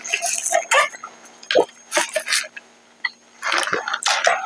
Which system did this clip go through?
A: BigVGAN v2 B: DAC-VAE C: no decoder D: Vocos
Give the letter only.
C